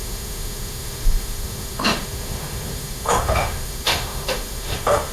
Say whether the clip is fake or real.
fake